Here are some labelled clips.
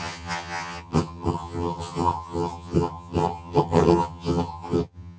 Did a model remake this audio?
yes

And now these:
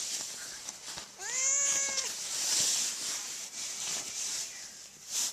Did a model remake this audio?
no